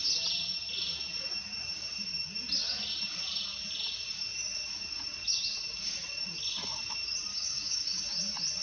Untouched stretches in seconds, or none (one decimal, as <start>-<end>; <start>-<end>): 0.0-7.3; 8.0-8.6